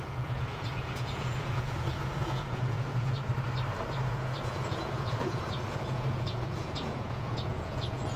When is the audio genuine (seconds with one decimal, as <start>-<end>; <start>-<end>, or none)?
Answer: 3.3-4.1